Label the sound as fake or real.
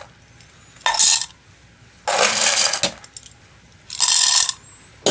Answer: real